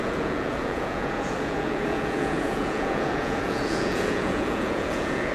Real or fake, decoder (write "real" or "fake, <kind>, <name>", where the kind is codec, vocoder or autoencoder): fake, vocoder, Vocos